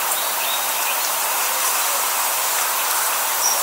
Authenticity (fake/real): fake